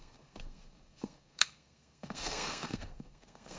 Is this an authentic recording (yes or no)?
no